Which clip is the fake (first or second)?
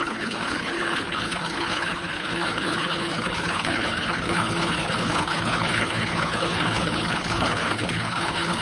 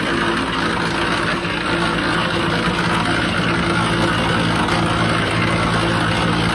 first